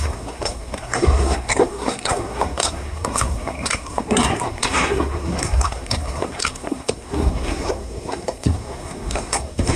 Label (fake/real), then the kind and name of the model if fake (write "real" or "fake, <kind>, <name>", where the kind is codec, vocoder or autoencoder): fake, codec, SNAC